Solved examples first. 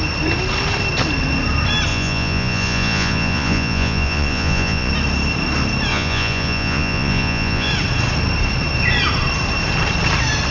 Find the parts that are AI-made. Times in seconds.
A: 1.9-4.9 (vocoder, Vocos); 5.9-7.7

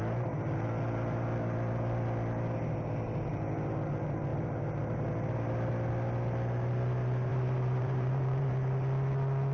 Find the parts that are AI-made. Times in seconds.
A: 4.3-4.8 (vocoder, BigVGAN v2); 7.3-8.5

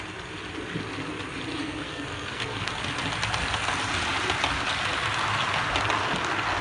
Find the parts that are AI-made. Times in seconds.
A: 1.6-2.7 (codec, SNAC)

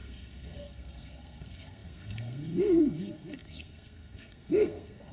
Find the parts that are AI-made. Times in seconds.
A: 0.0-5.1 (codec, SNAC)

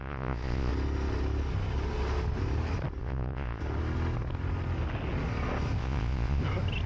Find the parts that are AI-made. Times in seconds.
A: 0.0-0.7 (vocoder, Vocos); 3.0-3.6; 5.8-6.4

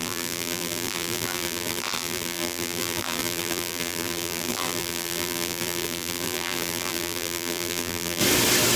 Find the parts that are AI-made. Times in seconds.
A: 0.0-8.2 (vocoder, BigVGAN v2)

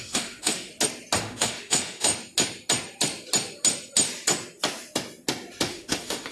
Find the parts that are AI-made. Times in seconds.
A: 0.0-0.7 (autoencoder, DAC-VAE); 1.2-2.1; 5.7-6.3

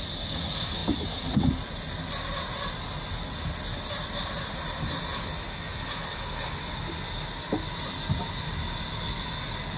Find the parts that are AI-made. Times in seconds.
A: none